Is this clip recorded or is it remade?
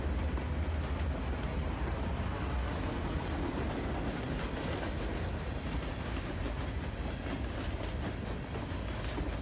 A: recorded